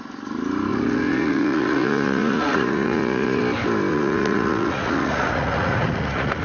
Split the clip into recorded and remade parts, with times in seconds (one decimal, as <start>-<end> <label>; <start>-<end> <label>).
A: 0.0-0.7 recorded; 0.7-3.4 remade; 3.4-3.9 recorded; 3.9-6.4 remade